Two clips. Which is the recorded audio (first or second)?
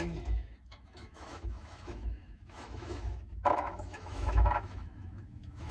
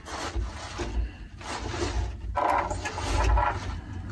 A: second